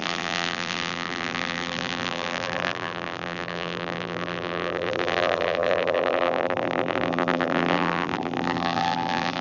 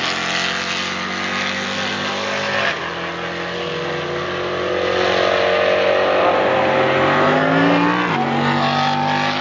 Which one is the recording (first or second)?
second